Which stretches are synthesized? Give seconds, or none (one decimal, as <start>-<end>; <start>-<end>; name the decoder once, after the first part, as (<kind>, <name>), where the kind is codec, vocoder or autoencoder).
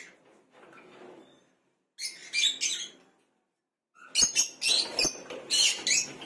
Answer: none